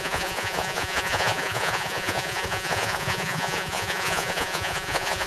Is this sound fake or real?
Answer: fake